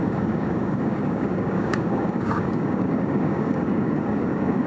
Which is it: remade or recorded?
remade